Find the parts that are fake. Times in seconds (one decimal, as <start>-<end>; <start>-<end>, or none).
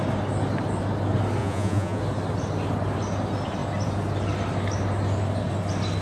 1.4-2.0